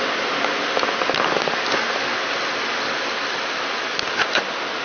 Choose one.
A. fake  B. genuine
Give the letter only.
B